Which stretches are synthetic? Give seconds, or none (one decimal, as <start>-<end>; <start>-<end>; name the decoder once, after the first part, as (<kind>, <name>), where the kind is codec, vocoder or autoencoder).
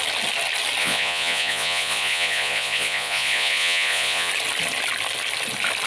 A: 0.8-4.3 (vocoder, Vocos)